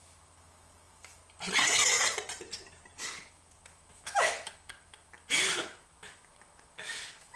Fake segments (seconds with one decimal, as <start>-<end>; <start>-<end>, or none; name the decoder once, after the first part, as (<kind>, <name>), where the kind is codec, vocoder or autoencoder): 0.0-1.2 (autoencoder, DAC-VAE); 3.3-7.4